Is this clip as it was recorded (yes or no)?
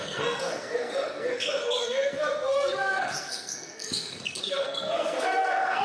no